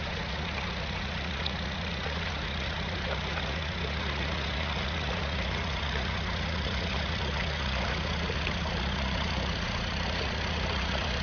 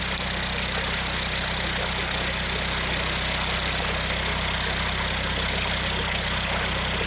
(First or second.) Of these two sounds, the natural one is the second